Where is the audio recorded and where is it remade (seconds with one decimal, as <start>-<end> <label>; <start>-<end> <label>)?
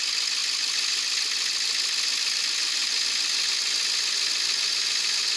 0.0-5.4 recorded